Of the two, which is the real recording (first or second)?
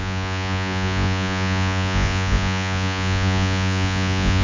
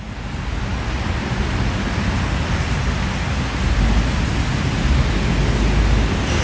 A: second